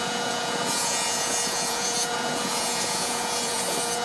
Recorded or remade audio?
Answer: remade